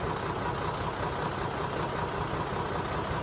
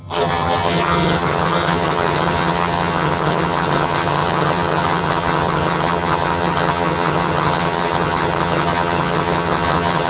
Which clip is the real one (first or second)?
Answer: first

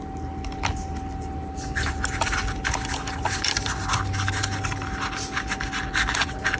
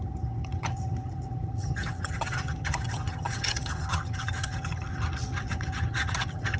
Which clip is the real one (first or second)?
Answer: first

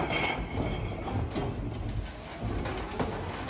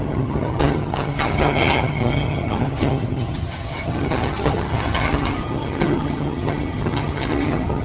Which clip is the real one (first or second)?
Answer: first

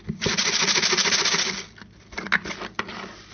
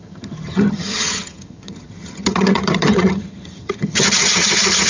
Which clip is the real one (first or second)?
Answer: first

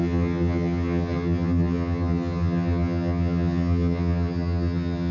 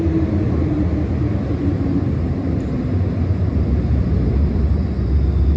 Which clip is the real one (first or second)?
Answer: second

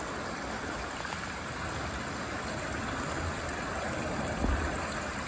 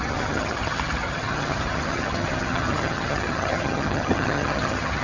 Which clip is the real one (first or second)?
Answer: first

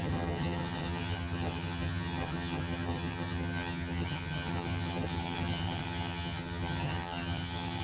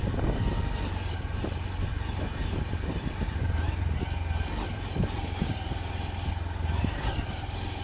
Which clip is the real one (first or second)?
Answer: second